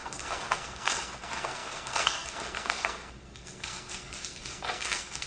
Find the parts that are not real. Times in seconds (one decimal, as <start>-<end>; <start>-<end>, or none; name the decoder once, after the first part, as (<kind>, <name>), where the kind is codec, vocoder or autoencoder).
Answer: 0.0-5.3 (codec, SNAC)